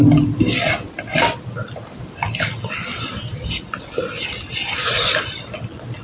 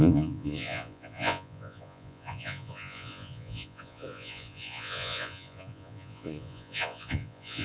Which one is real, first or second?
first